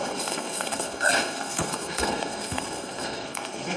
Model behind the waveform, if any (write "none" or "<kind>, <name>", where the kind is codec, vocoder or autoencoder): codec, SNAC